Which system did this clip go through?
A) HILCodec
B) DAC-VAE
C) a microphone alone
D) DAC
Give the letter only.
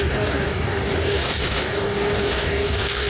D